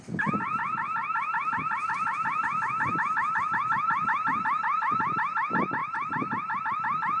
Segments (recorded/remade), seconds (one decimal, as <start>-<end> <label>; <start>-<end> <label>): 0.0-7.2 recorded